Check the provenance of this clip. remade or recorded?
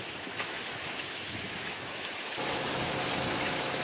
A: remade